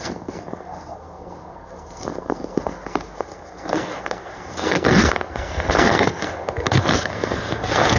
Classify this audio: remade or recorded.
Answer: remade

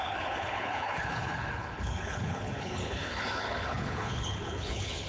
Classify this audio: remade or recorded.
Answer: remade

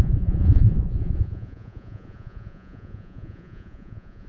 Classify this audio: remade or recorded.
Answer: remade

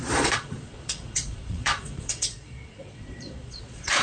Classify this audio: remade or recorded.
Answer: remade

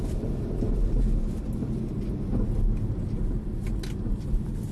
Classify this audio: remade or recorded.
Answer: recorded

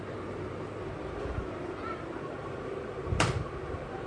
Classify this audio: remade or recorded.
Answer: remade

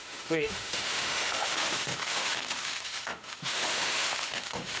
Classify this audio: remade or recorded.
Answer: remade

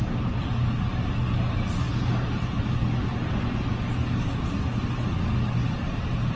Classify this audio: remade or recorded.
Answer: recorded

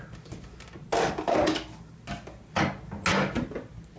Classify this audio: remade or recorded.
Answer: recorded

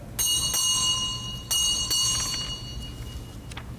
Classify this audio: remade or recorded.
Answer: recorded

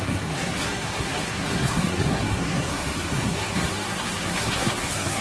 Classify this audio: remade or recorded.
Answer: remade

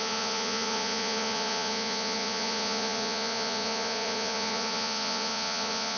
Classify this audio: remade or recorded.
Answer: remade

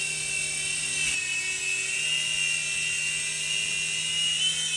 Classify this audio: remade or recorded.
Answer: recorded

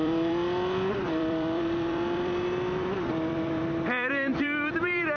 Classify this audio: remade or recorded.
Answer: remade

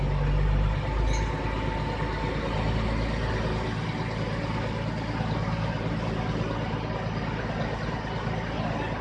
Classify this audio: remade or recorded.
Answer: recorded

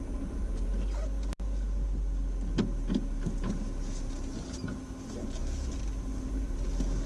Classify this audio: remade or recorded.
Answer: recorded